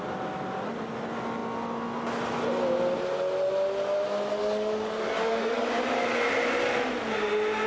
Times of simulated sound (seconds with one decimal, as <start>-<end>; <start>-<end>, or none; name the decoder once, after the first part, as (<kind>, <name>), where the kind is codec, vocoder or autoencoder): 4.4-5.6 (codec, DAC)